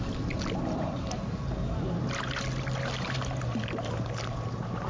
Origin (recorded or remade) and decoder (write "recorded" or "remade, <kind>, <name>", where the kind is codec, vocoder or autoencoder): recorded